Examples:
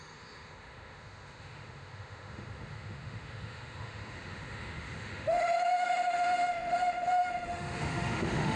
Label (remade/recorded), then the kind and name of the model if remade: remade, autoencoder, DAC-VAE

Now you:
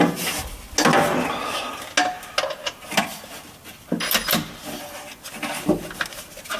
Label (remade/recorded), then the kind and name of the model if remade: recorded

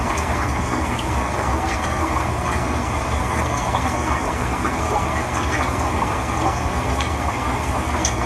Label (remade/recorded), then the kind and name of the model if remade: remade, codec, SNAC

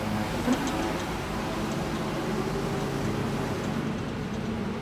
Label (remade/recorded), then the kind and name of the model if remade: recorded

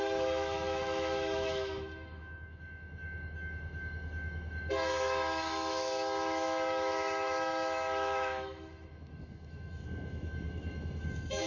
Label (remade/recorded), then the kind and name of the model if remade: remade, autoencoder, DAC-VAE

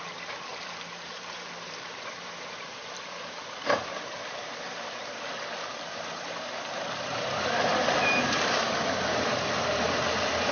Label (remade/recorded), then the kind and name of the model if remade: remade, vocoder, BigVGAN v2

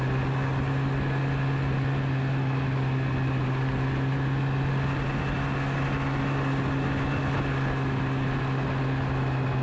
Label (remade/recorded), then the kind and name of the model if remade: recorded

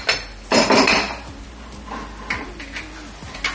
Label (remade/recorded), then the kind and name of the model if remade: recorded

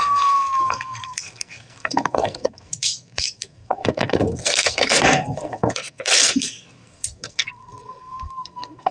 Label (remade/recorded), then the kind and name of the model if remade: remade, codec, SNAC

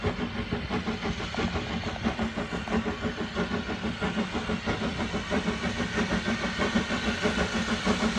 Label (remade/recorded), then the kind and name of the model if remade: recorded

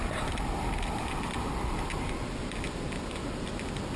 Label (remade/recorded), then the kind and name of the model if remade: recorded